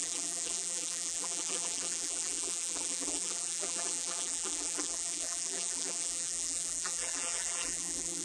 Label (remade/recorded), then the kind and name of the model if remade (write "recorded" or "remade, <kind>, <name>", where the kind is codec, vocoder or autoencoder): remade, vocoder, BigVGAN v2